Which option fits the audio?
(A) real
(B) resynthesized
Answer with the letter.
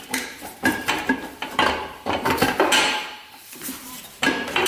B